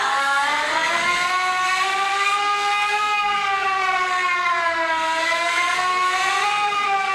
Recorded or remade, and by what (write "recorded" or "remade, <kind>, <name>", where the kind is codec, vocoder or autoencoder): remade, codec, SNAC